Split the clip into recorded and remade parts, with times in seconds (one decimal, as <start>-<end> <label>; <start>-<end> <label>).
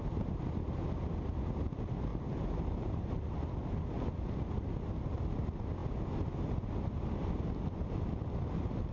0.0-0.5 remade; 0.5-2.1 recorded; 2.1-3.5 remade; 3.5-4.1 recorded; 4.1-4.7 remade; 4.7-8.9 recorded